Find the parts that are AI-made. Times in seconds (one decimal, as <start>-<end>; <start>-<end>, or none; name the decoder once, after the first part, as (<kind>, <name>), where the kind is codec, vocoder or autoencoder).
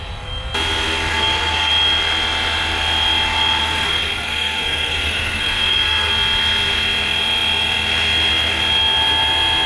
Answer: 1.1-1.7 (codec, SNAC); 3.6-6.1